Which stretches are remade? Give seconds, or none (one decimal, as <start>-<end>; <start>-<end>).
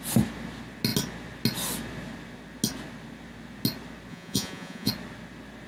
4.1-4.9